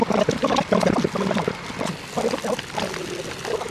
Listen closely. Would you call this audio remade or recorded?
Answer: recorded